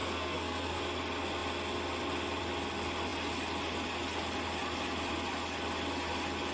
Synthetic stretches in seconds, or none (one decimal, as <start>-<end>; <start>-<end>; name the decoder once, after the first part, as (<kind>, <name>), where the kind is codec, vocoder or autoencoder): 0.0-0.8 (codec, SNAC)